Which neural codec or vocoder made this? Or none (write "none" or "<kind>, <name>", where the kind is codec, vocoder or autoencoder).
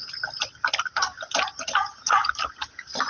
none